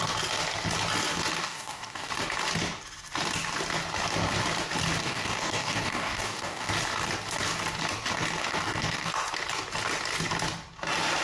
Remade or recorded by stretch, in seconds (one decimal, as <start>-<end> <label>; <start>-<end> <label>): 0.0-1.4 recorded; 1.4-2.1 remade; 2.1-5.0 recorded; 5.0-6.7 remade; 6.7-8.4 recorded; 8.4-9.1 remade; 9.1-11.2 recorded